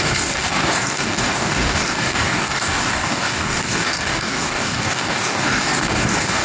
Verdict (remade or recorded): remade